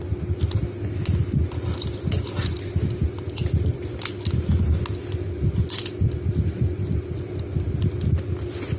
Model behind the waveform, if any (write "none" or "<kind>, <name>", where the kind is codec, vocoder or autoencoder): none